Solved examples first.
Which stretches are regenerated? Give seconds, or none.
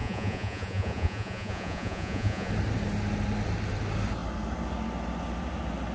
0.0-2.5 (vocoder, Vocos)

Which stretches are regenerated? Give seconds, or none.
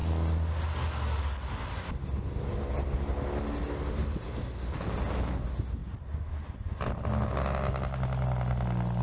none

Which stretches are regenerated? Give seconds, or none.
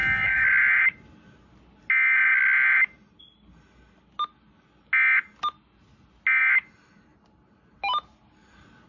none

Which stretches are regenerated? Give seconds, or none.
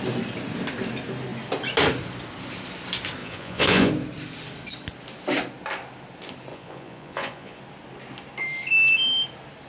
3.2-3.9 (vocoder, Vocos); 6.5-7.6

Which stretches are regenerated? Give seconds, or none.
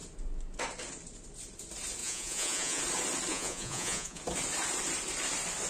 2.0-2.8 (vocoder, Vocos); 3.3-4.2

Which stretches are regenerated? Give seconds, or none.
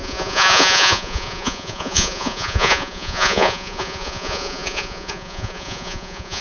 0.0-6.4 (vocoder, Vocos)